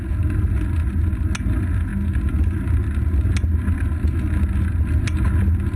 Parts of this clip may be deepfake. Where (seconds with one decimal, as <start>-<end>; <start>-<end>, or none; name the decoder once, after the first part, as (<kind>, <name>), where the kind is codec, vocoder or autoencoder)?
none